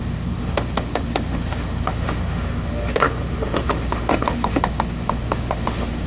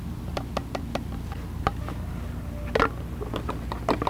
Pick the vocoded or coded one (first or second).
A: first